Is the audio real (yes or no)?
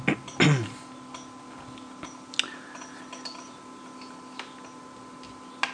yes